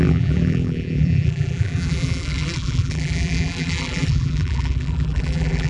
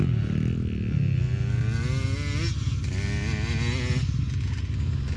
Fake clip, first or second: first